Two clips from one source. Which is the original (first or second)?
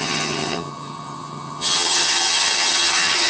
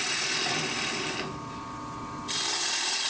second